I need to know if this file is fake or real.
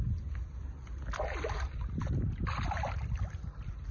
real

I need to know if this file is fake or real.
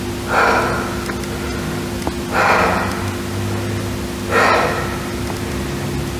real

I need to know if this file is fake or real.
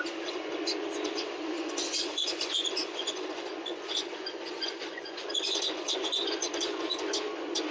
fake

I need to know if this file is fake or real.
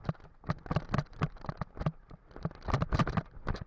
real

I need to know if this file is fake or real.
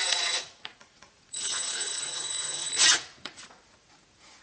fake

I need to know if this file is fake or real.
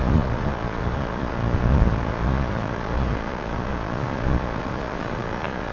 fake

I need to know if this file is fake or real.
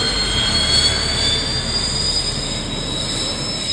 real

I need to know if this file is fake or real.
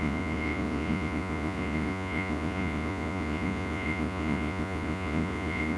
fake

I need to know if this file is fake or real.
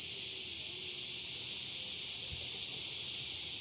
real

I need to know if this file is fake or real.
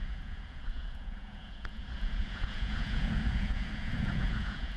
fake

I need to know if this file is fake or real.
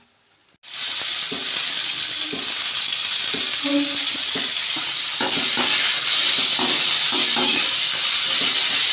real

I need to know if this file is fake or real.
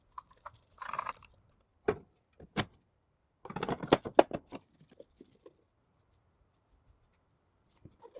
real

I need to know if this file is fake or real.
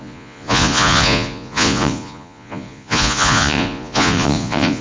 fake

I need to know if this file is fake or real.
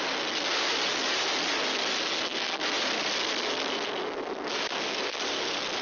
real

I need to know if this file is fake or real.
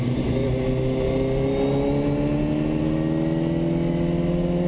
real